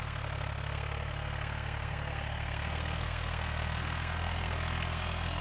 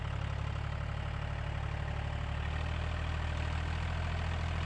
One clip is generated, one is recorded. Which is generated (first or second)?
first